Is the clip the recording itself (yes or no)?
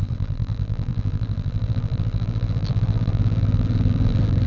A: no